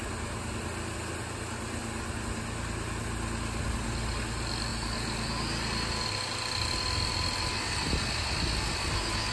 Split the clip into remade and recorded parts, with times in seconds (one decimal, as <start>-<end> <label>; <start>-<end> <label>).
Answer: 0.0-9.3 recorded